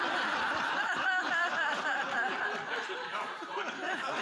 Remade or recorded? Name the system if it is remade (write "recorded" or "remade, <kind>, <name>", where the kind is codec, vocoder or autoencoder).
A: remade, vocoder, BigVGAN v2